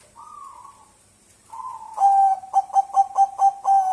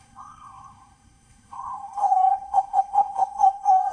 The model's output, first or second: second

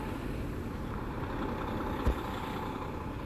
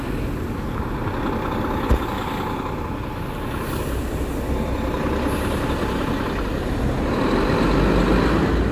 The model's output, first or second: first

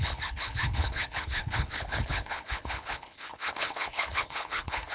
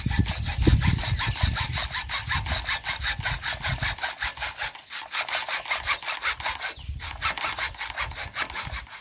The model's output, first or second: first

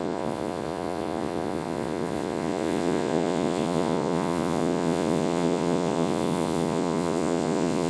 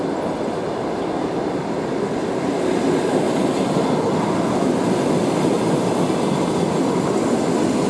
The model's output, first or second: first